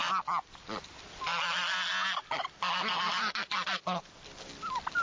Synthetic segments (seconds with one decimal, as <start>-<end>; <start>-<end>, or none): none